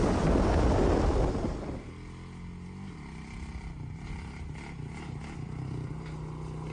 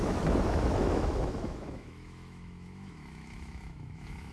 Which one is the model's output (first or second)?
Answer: second